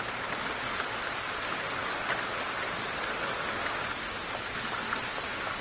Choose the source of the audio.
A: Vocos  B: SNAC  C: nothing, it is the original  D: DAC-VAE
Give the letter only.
C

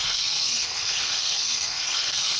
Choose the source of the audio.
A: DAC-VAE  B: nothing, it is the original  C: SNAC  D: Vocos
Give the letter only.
C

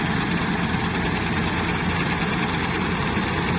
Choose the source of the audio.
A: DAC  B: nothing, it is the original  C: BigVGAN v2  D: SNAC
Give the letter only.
B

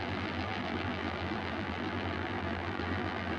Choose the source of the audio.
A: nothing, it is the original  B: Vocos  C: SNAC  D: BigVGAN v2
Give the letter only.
D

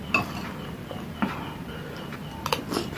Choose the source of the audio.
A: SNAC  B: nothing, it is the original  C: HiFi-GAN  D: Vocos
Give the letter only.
B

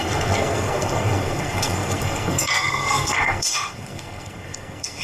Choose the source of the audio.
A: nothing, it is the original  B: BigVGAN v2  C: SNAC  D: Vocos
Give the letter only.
C